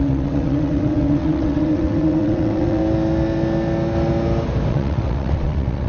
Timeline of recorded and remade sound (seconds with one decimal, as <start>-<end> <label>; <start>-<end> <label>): 0.0-2.8 remade; 2.8-4.7 recorded; 4.7-5.9 remade

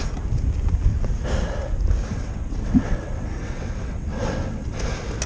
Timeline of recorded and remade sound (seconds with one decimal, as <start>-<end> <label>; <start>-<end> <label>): 0.0-2.1 recorded; 2.1-4.8 remade; 4.8-5.3 recorded

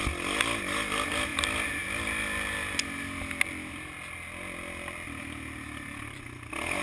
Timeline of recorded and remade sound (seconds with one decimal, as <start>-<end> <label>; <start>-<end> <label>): 0.0-6.8 recorded

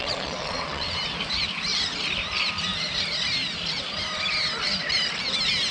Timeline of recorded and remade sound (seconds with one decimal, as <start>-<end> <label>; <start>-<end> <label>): 0.0-0.9 remade; 0.9-5.7 recorded

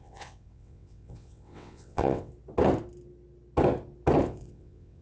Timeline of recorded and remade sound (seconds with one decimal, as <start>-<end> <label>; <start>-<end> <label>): 0.0-2.3 remade; 2.3-4.2 recorded; 4.2-5.0 remade